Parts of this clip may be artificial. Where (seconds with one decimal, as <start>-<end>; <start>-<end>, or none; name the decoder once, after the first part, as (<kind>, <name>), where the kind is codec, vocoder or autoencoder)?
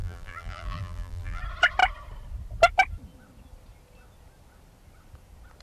0.0-1.4 (vocoder, BigVGAN v2)